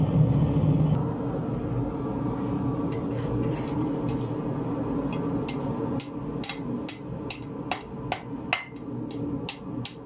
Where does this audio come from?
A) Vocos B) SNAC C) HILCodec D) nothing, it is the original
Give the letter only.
D